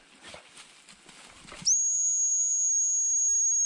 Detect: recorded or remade recorded